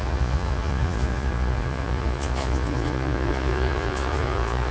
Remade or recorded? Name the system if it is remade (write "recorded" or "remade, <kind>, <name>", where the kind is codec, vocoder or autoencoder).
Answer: remade, vocoder, Vocos